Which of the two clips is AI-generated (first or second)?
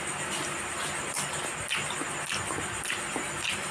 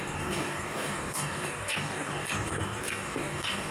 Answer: second